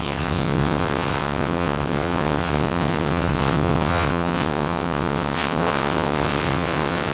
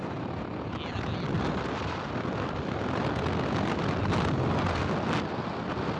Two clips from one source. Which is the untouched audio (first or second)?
second